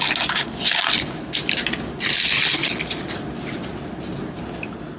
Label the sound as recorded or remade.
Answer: recorded